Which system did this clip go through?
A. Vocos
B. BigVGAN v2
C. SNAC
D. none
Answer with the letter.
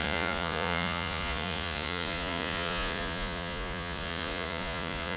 A